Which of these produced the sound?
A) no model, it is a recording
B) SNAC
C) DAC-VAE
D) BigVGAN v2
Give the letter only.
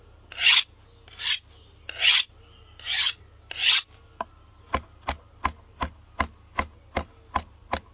A